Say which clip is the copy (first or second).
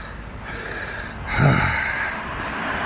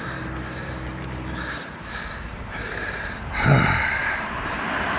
second